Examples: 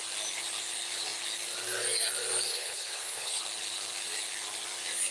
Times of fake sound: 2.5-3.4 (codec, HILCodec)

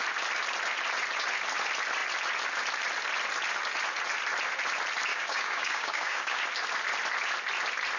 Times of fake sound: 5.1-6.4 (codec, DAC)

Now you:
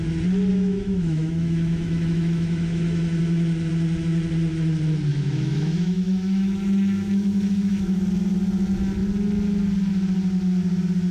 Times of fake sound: 0.5-3.2 (autoencoder, DAC-VAE); 5.1-8.0

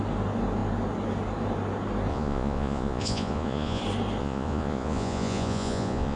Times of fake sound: 2.1-3.8 (vocoder, Vocos); 4.2-6.2

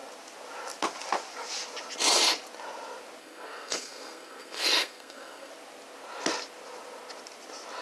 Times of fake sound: 3.2-5.5 (codec, SNAC)